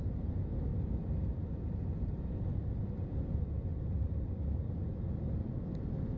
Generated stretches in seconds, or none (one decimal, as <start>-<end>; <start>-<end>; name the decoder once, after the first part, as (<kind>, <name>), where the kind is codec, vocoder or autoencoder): none

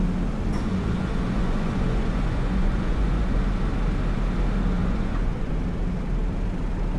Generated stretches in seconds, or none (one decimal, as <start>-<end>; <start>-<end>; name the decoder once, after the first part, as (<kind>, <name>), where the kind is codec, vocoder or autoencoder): 0.5-3.4 (vocoder, Vocos); 4.8-5.5

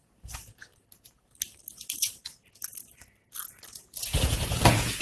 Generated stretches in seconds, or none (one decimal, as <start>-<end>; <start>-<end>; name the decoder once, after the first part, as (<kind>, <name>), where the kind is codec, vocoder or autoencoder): 0.0-0.7 (vocoder, Vocos); 3.7-5.0

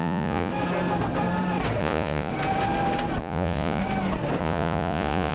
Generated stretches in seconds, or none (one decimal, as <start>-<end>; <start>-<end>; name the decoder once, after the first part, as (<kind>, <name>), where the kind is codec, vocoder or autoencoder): 0.0-0.5 (vocoder, Vocos); 1.8-2.3; 3.2-3.8; 4.4-5.3